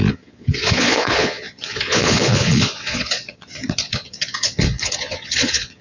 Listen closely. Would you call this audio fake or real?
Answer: fake